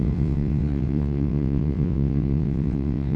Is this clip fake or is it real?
fake